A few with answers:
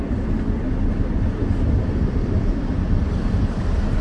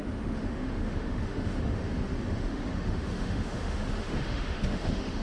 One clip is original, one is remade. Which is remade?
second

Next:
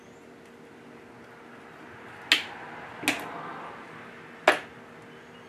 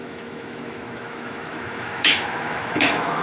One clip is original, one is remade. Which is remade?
second